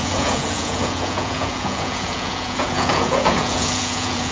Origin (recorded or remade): remade